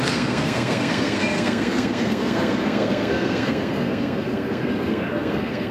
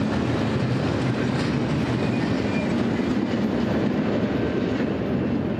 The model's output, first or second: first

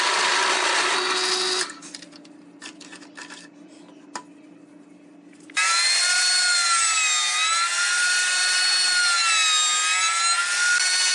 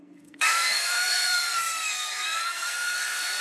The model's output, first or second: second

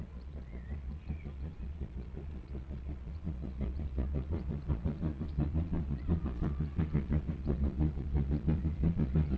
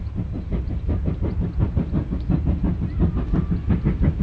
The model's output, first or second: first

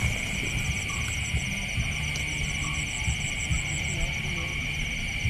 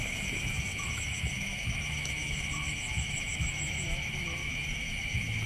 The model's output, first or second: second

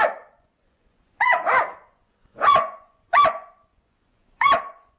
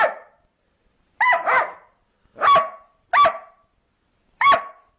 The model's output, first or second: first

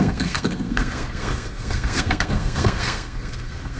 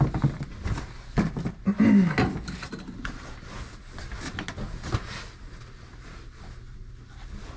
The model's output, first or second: first